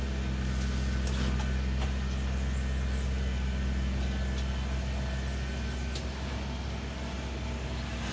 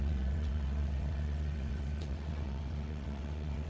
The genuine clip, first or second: first